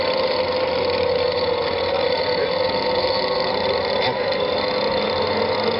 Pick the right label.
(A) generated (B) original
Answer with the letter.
B